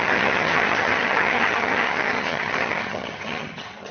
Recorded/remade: remade